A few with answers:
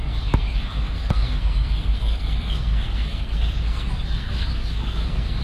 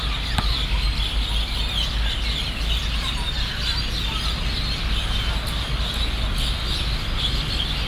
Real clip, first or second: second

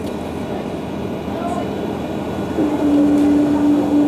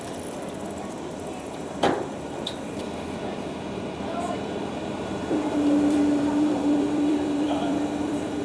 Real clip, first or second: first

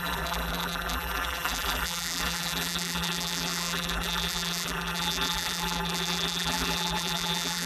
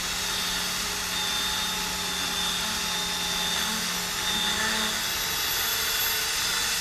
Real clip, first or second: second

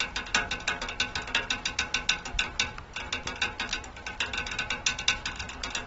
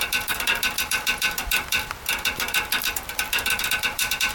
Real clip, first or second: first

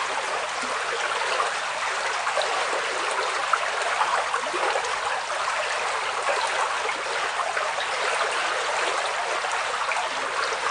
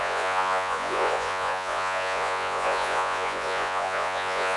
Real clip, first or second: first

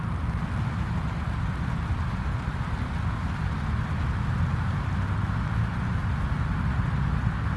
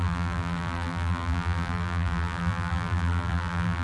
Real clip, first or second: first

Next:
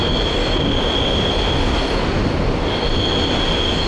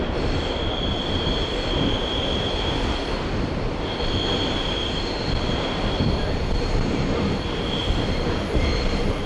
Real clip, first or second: first